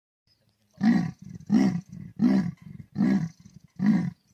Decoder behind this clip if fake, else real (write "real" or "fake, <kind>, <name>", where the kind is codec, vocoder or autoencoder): fake, vocoder, BigVGAN v2